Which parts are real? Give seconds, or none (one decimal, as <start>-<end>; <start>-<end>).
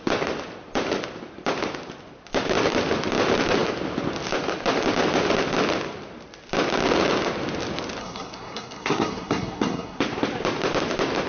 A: 0.0-8.0; 10.0-11.3